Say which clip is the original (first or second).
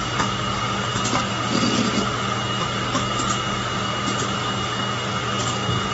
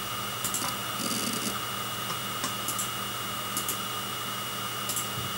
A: second